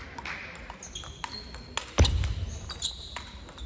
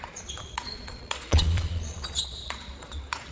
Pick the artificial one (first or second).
second